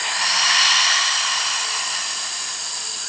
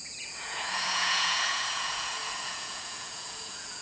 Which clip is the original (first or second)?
first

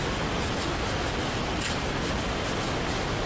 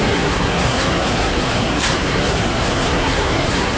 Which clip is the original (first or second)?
first